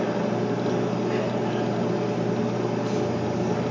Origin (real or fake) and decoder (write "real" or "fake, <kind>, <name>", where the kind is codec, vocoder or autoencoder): real